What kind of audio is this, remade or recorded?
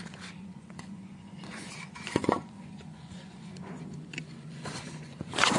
remade